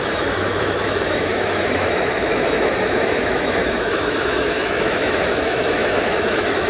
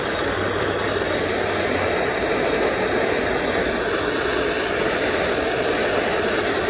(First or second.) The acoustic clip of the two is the second